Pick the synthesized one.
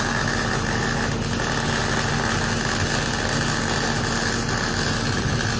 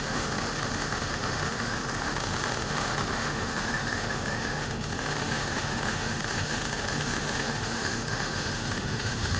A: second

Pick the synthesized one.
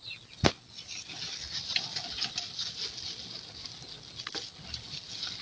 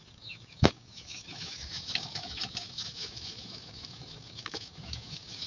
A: second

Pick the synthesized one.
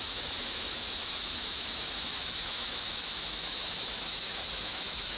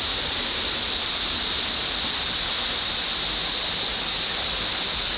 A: first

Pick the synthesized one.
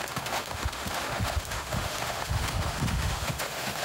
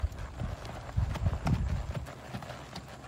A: first